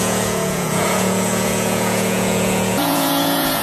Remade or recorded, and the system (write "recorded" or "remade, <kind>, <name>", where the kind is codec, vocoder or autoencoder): remade, vocoder, Vocos